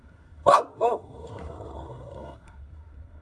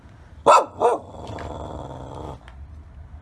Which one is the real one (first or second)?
second